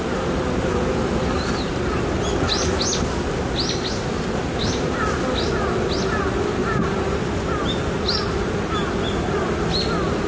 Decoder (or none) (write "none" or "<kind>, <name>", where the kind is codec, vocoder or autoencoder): none